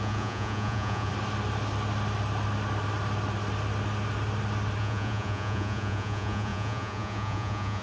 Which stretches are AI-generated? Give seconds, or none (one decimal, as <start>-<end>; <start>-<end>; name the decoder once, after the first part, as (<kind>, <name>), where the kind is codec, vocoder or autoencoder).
0.0-1.1 (vocoder, Vocos); 4.8-7.8